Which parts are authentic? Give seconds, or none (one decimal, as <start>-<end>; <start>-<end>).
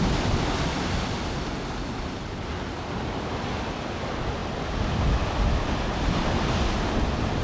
0.0-7.4